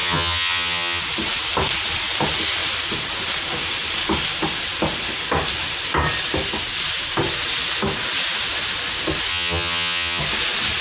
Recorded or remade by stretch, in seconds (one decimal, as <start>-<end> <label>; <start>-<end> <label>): 0.0-1.0 remade; 1.0-9.3 recorded; 9.3-10.2 remade; 10.2-10.8 recorded